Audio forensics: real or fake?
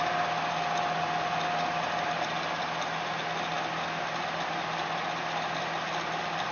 real